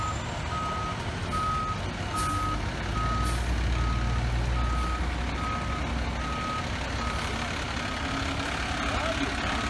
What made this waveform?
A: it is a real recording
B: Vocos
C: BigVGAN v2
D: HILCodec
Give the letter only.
A